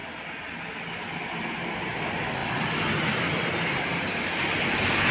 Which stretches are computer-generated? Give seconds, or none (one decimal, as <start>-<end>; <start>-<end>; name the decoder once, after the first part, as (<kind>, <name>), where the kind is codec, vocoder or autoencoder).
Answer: 2.4-3.0 (vocoder, BigVGAN v2)